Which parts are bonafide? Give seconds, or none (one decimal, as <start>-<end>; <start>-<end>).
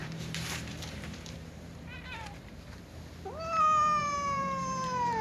3.1-4.0